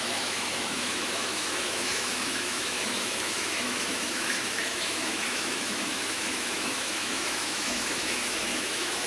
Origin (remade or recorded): remade